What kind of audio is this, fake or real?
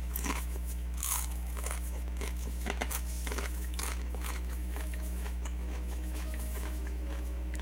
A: fake